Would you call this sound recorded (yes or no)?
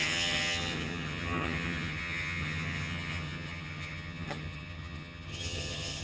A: no